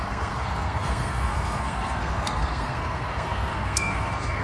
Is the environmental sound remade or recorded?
remade